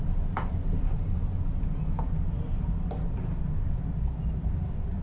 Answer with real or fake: fake